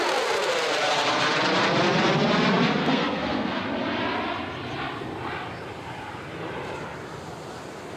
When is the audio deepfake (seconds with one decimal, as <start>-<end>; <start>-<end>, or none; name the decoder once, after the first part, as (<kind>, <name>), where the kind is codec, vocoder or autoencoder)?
2.8-3.6 (codec, SNAC)